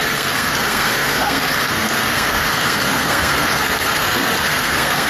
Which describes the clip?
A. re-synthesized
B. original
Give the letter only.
A